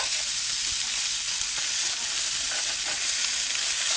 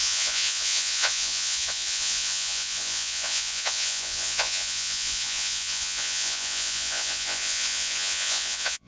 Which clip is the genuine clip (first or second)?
first